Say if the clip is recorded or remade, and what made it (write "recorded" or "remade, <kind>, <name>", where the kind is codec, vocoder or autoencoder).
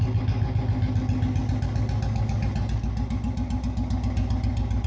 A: recorded